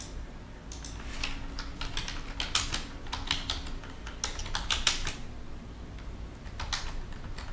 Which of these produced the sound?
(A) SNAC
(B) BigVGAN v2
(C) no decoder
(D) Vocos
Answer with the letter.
C